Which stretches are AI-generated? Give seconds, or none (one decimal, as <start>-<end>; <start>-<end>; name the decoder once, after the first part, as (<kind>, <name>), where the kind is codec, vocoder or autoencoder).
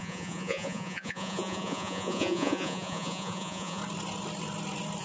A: 0.0-3.8 (vocoder, Vocos)